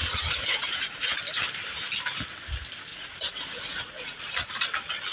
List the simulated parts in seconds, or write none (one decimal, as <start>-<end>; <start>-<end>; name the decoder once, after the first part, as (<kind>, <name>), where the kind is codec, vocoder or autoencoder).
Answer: 0.0-1.2 (vocoder, Vocos); 2.9-4.2

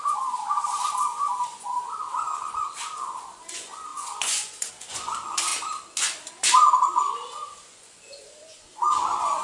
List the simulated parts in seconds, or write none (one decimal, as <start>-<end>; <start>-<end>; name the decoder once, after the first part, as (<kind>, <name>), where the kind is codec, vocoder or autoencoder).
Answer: 0.0-5.5 (vocoder, Vocos); 6.3-9.4

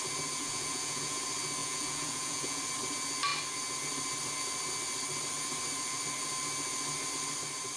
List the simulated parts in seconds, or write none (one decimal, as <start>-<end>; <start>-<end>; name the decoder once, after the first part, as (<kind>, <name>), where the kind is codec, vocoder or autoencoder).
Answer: 0.4-1.2 (vocoder, Vocos); 1.6-2.6

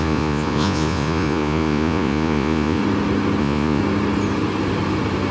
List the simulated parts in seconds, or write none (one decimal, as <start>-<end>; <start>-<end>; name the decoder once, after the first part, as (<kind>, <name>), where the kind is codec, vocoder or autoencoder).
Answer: 0.0-2.8 (vocoder, Vocos); 3.4-3.8

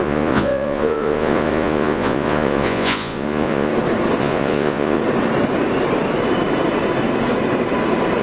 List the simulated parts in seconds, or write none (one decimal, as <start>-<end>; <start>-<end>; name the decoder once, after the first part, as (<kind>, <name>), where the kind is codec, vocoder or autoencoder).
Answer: 0.0-3.7 (vocoder, Vocos); 4.2-5.0

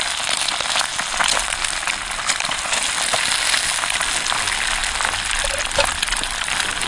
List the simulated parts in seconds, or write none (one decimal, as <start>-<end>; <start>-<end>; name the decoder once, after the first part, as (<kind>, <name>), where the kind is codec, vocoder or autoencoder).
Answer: none